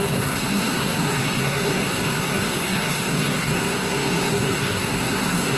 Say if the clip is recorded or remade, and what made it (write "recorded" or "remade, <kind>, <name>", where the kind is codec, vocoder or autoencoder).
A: remade, codec, SNAC